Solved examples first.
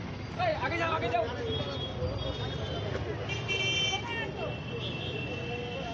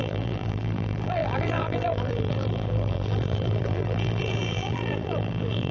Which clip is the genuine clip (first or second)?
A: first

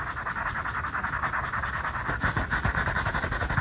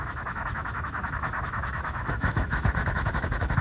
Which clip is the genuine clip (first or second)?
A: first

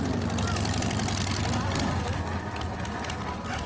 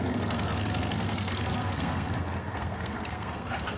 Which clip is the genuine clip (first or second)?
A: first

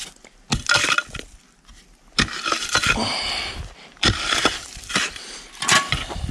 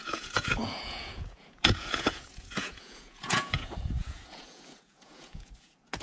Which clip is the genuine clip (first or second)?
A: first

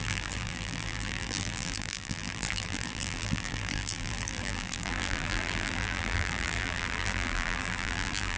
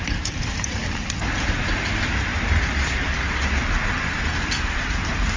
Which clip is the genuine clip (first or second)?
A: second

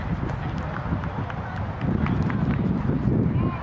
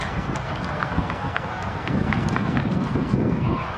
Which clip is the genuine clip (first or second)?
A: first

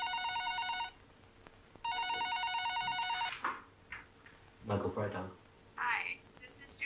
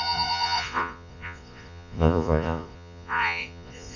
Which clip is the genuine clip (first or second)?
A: first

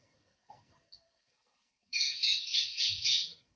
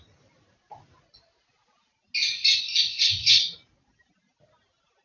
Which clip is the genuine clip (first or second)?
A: second